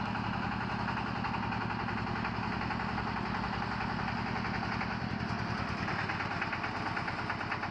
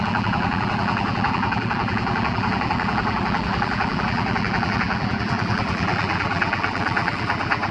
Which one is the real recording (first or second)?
first